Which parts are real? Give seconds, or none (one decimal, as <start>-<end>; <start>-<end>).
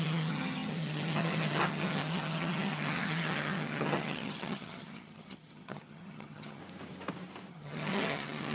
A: 6.6-7.5